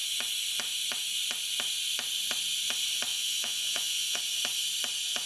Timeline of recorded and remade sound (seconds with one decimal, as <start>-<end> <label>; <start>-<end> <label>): 0.0-3.1 recorded; 3.1-4.2 remade; 4.2-5.3 recorded